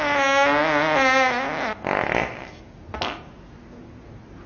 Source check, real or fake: real